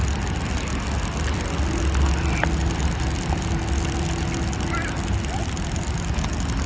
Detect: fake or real real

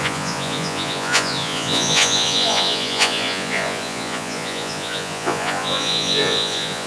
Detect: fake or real fake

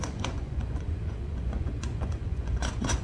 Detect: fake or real fake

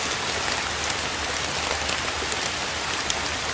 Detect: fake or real real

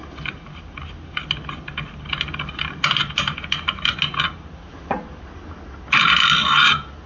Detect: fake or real real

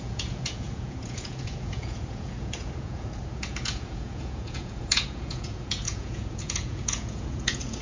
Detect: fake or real fake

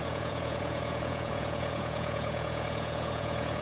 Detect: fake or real fake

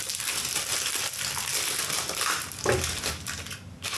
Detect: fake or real real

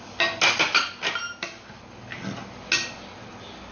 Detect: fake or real real